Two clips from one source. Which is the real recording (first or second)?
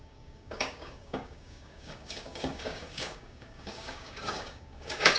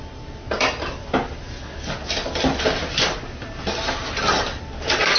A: second